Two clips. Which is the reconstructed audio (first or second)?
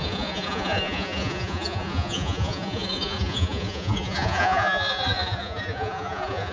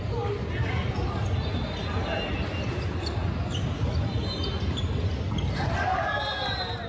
first